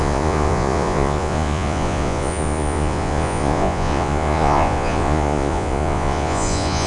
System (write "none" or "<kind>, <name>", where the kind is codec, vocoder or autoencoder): vocoder, Vocos